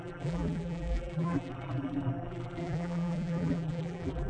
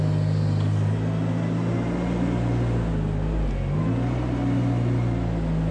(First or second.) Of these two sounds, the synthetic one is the first